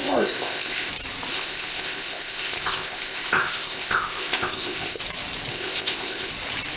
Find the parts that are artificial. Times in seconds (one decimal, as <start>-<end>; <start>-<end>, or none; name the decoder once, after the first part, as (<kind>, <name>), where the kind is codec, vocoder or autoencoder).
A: 0.0-0.9 (codec, ZipCodec); 1.3-5.0; 5.5-6.3